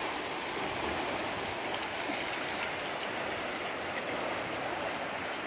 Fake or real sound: real